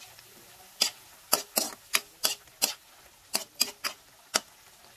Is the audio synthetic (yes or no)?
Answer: no